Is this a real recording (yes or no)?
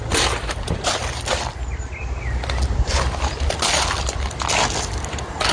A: yes